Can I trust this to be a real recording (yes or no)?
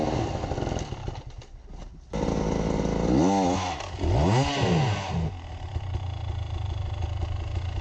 yes